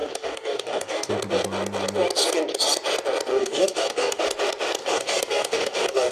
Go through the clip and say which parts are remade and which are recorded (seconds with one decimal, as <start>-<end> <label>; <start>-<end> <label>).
0.0-1.1 remade; 1.1-3.3 recorded; 3.3-4.2 remade; 4.2-4.8 recorded; 4.8-6.1 remade